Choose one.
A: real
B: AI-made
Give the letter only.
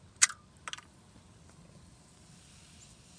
A